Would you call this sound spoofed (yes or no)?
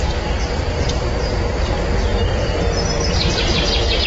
no